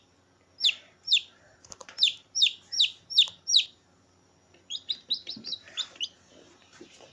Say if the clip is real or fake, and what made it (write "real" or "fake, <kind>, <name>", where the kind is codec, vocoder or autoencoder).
fake, vocoder, BigVGAN v2